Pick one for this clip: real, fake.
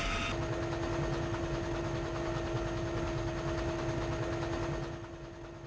real